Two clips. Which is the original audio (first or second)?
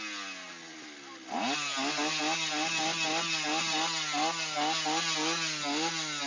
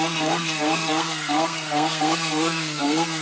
first